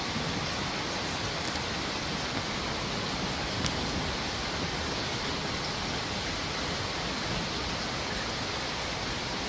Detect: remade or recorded recorded